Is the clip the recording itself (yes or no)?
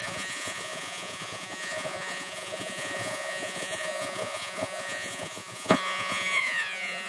no